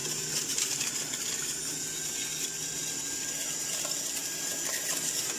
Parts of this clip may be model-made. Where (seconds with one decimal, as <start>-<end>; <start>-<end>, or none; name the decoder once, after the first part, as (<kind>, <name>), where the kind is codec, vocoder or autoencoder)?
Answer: none